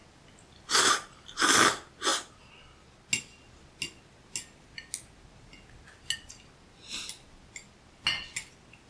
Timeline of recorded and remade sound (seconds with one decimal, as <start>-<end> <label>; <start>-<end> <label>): 0.0-8.9 recorded